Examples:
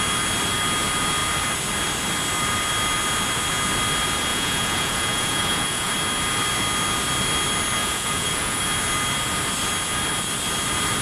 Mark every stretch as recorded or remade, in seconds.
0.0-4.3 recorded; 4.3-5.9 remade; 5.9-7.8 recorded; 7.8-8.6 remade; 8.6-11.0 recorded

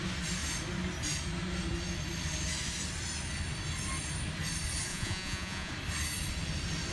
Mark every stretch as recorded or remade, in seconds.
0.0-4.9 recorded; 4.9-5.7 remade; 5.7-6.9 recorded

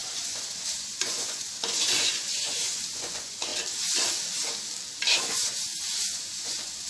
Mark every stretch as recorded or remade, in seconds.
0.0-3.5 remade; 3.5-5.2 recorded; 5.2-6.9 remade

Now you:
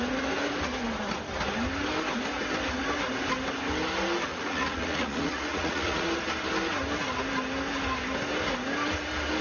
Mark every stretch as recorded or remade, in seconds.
0.0-4.3 recorded; 4.3-6.1 remade; 6.1-9.4 recorded

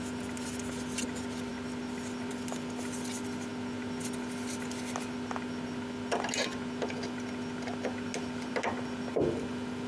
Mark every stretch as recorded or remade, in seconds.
0.0-9.9 recorded